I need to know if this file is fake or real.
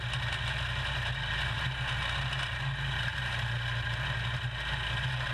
real